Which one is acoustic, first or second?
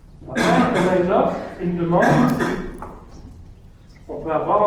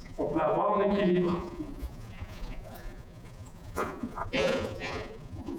first